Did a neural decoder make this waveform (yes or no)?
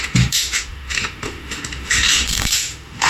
yes